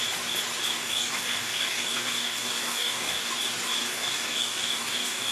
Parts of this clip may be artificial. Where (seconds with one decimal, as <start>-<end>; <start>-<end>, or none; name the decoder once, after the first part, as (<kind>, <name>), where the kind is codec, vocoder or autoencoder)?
0.7-3.3 (codec, DAC); 3.8-5.3